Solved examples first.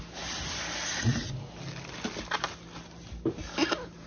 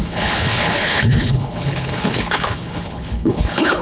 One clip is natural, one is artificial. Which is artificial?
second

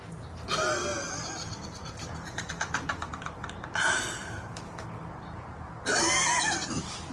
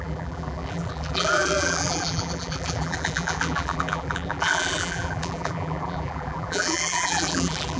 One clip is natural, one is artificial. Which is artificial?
second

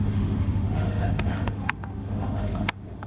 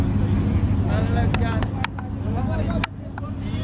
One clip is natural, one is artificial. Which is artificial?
first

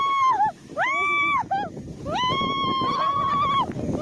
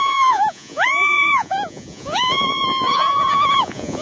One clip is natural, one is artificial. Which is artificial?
second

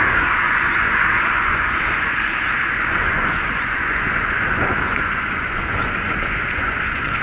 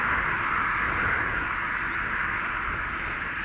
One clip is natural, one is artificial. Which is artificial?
first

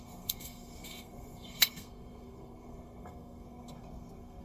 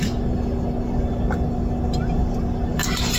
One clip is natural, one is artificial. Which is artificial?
first